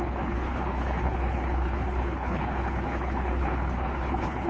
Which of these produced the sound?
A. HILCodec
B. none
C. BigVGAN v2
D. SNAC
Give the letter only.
A